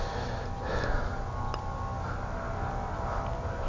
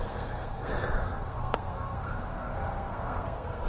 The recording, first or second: first